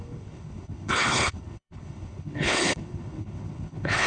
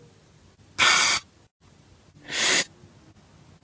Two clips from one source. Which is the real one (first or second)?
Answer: second